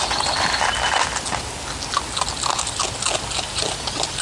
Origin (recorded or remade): recorded